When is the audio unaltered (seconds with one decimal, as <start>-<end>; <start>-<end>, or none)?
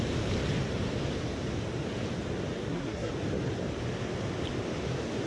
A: 0.0-2.6; 3.1-5.3